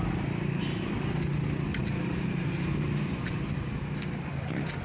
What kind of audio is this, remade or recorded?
recorded